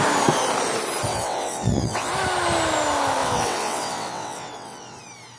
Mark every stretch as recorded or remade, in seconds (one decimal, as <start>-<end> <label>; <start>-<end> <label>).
0.0-1.1 recorded; 1.1-2.1 remade; 2.1-3.2 recorded; 3.2-5.0 remade; 5.0-5.4 recorded